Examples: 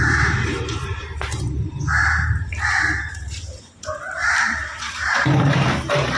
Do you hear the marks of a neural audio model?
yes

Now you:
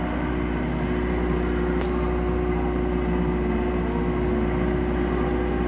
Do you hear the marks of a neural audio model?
yes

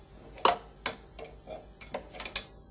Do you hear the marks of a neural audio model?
no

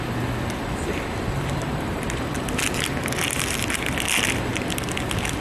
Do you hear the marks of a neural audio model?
no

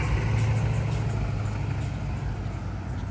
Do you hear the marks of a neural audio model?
no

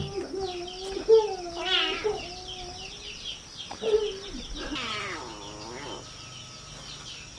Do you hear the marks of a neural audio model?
no